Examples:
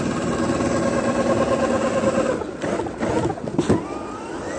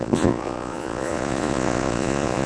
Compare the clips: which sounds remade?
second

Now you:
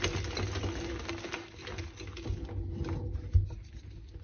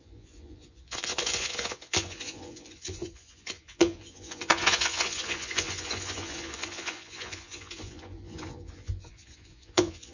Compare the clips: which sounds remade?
second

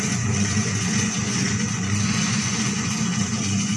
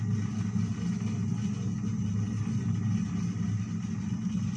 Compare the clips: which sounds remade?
first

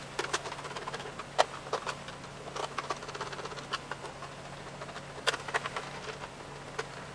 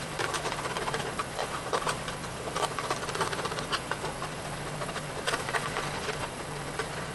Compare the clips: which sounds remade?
second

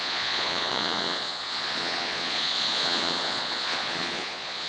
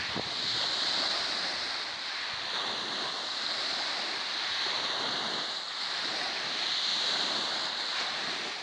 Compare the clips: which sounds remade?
first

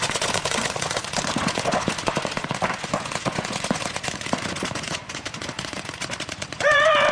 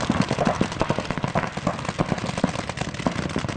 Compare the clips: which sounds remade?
first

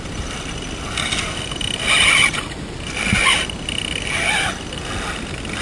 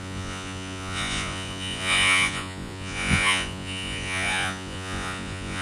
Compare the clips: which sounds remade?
second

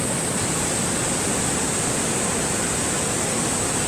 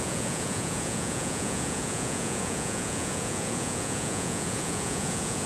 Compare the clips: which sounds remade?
second